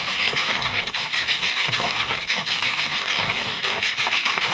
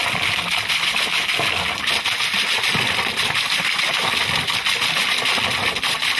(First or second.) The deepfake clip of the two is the first